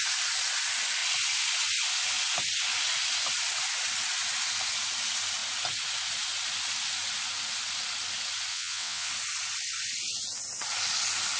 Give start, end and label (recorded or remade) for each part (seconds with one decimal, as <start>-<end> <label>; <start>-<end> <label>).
0.0-8.5 recorded; 8.5-9.1 remade; 9.1-11.4 recorded